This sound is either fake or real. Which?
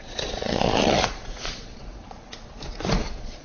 fake